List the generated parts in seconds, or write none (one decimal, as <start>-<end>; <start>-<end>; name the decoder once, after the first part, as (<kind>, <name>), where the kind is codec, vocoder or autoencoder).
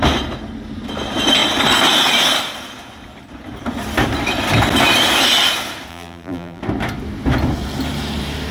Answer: 5.9-6.6 (vocoder, BigVGAN v2)